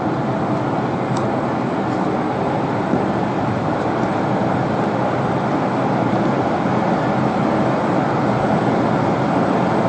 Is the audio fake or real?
real